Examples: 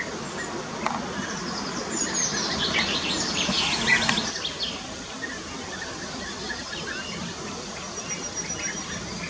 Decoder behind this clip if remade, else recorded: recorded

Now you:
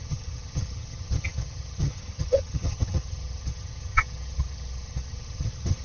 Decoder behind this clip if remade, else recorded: remade, vocoder, HiFi-GAN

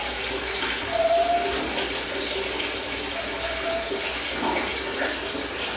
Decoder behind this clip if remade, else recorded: recorded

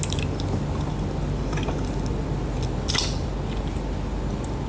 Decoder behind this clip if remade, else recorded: recorded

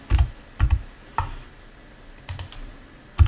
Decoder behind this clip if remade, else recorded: recorded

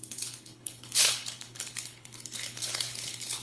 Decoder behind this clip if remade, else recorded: remade, codec, HILCodec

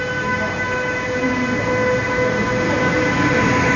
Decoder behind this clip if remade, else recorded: recorded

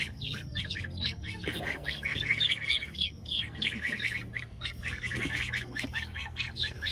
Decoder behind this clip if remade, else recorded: remade, codec, SNAC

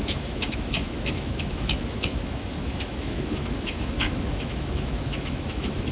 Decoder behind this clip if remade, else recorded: remade, autoencoder, DAC-VAE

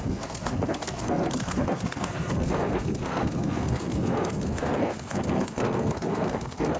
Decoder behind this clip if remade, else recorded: remade, codec, SNAC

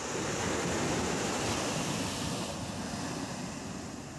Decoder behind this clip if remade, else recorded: recorded